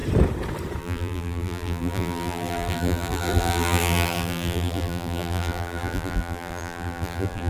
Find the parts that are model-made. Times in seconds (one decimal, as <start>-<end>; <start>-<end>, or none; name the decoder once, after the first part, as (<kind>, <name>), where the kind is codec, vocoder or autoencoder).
0.8-7.5 (vocoder, BigVGAN v2)